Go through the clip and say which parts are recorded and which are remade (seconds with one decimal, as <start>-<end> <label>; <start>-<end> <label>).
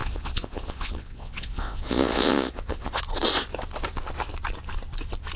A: 0.0-3.0 remade; 3.0-5.4 recorded